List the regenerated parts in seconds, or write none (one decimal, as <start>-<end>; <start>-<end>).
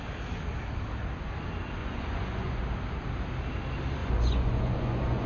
1.8-2.6; 4.0-5.3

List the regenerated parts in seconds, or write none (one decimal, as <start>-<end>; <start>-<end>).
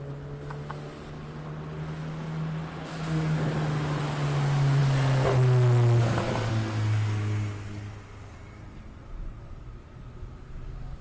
none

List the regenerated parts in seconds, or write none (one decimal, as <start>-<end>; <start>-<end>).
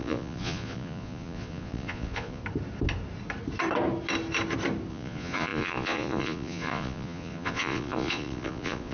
0.0-2.4; 4.9-8.9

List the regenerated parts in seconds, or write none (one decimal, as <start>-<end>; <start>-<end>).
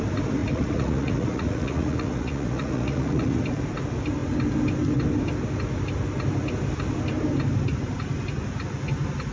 0.4-3.4